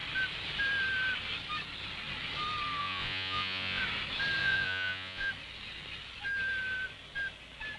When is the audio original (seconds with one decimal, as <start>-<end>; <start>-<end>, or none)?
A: 0.0-2.8; 3.8-4.4; 5.3-7.8